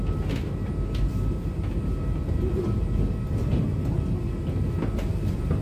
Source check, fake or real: real